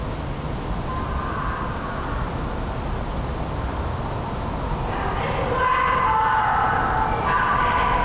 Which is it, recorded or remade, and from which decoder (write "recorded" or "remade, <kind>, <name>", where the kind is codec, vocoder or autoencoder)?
recorded